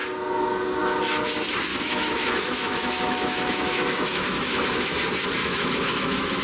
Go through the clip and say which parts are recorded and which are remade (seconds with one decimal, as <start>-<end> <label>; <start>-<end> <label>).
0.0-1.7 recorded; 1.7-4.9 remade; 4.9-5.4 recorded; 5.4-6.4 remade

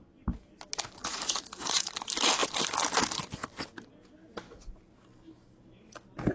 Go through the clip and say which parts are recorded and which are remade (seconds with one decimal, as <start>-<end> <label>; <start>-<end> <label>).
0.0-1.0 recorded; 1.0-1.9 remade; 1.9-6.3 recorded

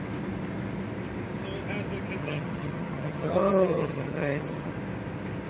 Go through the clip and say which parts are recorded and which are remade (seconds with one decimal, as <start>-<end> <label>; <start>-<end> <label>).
0.0-2.2 recorded; 2.2-4.7 remade; 4.7-5.5 recorded